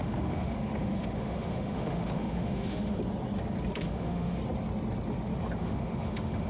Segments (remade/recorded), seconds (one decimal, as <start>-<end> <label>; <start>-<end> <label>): 0.0-3.0 remade; 3.0-3.7 recorded; 3.7-4.4 remade; 4.4-5.6 recorded; 5.6-6.5 remade